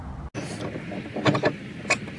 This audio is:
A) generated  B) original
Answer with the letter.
B